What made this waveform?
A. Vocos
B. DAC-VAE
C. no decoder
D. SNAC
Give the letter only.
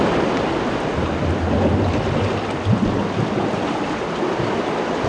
C